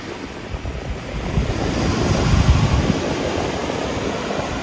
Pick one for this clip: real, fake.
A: real